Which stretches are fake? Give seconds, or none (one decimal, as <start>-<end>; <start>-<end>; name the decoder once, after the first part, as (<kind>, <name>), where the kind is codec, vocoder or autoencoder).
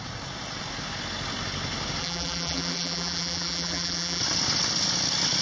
2.0-4.2 (vocoder, BigVGAN v2)